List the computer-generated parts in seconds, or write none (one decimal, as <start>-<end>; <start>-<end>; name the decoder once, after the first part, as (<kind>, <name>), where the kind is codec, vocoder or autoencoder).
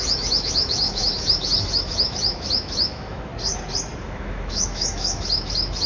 0.0-3.3 (autoencoder, DAC-VAE); 4.0-5.9